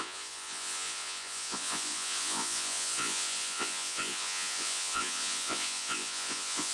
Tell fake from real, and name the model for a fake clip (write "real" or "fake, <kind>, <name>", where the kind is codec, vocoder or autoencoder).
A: fake, vocoder, Vocos